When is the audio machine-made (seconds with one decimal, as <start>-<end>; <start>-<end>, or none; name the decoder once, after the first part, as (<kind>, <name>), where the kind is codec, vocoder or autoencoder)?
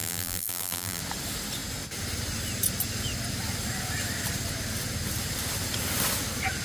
0.0-1.0 (vocoder, BigVGAN v2)